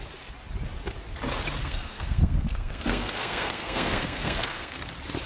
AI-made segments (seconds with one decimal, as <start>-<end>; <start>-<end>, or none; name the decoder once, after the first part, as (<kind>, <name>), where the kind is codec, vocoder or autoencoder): 1.6-4.8 (codec, SNAC)